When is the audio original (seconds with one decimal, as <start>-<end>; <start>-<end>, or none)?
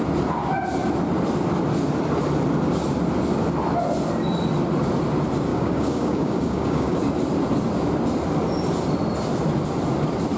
0.0-5.5; 7.0-10.4